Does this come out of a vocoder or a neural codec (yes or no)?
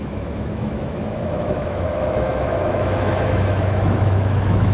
yes